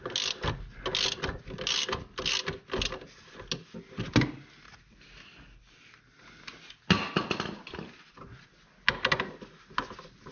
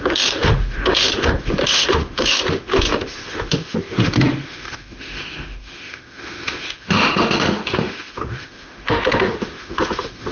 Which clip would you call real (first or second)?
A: first